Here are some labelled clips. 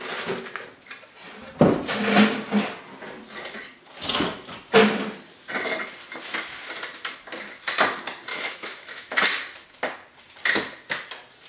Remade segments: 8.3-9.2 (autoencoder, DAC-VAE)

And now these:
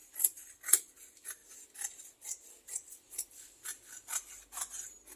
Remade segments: 0.8-1.4 (vocoder, BigVGAN v2); 2.9-5.2